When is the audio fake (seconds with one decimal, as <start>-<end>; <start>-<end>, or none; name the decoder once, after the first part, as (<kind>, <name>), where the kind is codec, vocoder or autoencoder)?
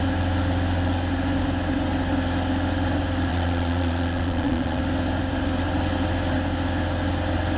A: 3.3-4.8 (vocoder, Vocos)